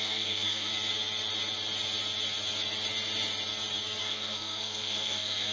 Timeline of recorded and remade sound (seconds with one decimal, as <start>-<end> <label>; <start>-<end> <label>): 0.0-0.7 remade; 0.7-4.0 recorded; 4.0-5.5 remade